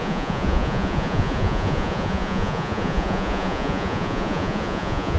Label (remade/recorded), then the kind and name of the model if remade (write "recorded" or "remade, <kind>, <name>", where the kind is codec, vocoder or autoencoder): remade, vocoder, Vocos